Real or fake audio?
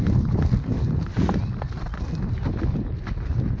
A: real